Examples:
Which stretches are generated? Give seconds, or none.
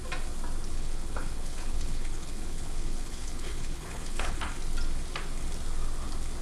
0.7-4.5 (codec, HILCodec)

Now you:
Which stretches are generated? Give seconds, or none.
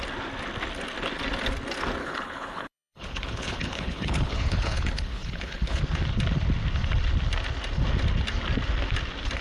2.0-5.8 (codec, HILCodec)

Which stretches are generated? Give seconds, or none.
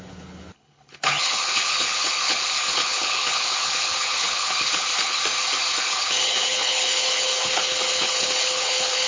0.0-5.2 (codec, HILCodec); 5.8-9.1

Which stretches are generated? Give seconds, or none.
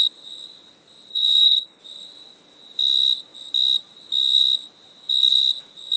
1.1-1.8 (codec, HILCodec)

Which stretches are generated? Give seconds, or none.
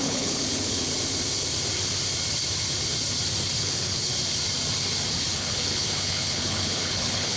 0.0-0.9 (codec, HILCodec); 3.6-4.1; 5.1-7.4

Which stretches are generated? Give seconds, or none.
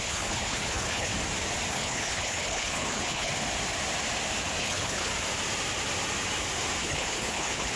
0.0-1.1 (codec, HILCodec); 1.7-3.3; 4.6-5.1; 6.8-7.8